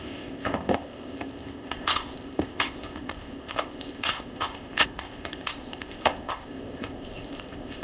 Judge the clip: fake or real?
fake